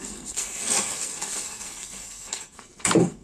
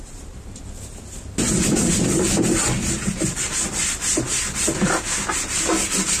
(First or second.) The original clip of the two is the second